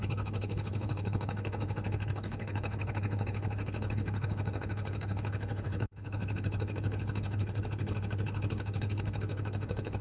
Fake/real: fake